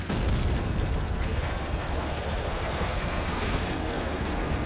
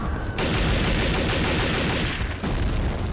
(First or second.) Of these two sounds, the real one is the second